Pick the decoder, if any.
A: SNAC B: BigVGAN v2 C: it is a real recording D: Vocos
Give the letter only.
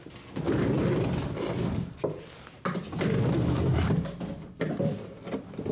C